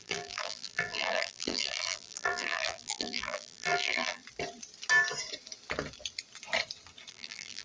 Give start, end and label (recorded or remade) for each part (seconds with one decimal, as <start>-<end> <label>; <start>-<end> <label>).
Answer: 0.0-4.2 remade; 4.2-7.1 recorded; 7.1-7.6 remade